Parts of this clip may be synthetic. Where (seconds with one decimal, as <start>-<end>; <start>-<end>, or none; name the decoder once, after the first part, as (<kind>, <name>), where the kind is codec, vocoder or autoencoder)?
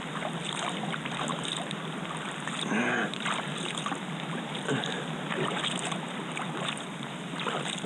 none